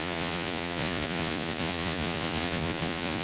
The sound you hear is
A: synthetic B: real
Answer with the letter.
A